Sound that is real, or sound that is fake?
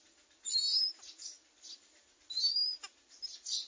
real